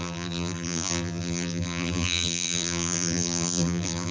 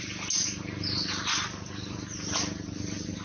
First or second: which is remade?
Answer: first